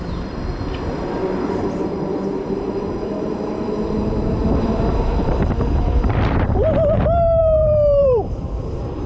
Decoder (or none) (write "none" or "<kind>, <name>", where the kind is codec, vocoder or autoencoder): vocoder, BigVGAN v2